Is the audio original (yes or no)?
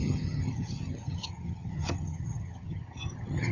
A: no